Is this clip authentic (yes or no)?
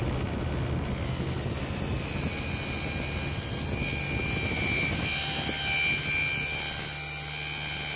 yes